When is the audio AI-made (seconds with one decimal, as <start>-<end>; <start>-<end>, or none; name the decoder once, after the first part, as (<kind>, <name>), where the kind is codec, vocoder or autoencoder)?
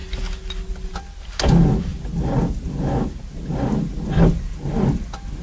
none